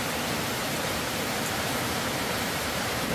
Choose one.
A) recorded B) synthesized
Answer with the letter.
B